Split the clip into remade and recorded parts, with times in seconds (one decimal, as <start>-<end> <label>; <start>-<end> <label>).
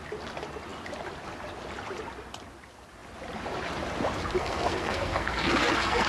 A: 0.0-4.4 recorded; 4.4-6.1 remade